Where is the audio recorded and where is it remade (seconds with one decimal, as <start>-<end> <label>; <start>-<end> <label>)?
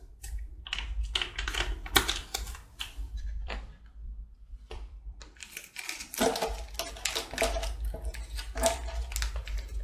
0.0-2.2 recorded; 2.2-5.7 remade; 5.7-9.8 recorded